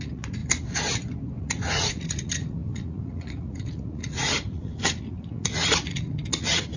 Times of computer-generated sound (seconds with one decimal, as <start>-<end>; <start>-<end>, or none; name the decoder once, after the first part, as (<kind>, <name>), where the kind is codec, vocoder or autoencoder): 0.0-0.4 (vocoder, Vocos); 1.4-6.8